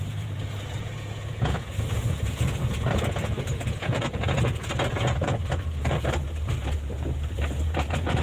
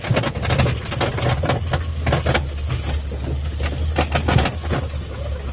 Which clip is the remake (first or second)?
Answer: first